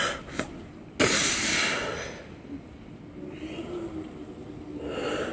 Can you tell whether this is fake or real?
real